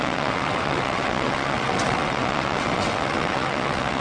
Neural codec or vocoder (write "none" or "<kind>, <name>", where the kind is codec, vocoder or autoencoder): vocoder, WaveNeXt